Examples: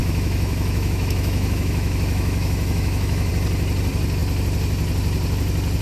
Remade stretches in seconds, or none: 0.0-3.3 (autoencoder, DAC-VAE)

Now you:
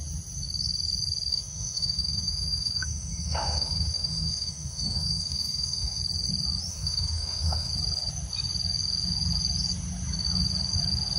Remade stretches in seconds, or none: 1.3-6.0 (autoencoder, DAC-VAE); 6.7-7.7

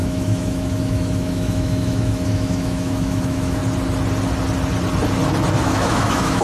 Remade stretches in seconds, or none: 0.0-3.6 (autoencoder, DAC-VAE); 5.6-6.4